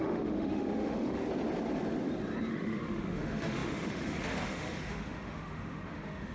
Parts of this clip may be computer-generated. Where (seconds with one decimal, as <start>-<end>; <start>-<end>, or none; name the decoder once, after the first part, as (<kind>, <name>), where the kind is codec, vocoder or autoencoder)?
0.0-1.2 (autoencoder, DAC-VAE); 2.5-6.3